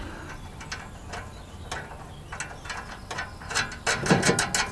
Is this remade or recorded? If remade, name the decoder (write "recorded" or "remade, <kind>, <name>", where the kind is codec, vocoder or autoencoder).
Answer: recorded